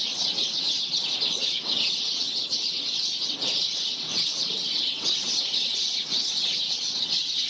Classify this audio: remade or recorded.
remade